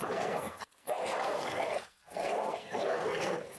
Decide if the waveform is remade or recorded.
remade